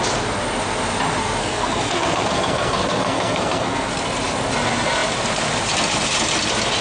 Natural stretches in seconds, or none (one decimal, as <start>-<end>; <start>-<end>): 0.0-1.2; 3.9-6.8